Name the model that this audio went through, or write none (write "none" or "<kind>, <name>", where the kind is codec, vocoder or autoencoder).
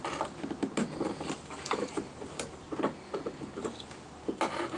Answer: none